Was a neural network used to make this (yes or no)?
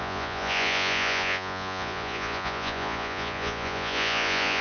yes